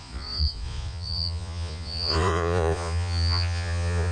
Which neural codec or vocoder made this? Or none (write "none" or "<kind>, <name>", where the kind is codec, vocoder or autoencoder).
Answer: vocoder, Vocos